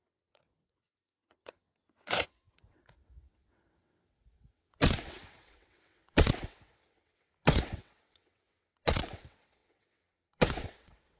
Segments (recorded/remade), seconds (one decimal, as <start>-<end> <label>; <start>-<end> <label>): 0.0-11.2 remade